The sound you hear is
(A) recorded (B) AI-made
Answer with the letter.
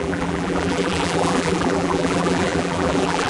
B